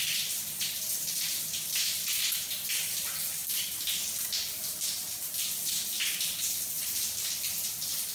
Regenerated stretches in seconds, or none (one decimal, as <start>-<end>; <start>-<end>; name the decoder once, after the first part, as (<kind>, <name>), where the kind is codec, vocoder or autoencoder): none